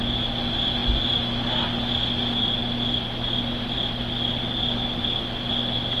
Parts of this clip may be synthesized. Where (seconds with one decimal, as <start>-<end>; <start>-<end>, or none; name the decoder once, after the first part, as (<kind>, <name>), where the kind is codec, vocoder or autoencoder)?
none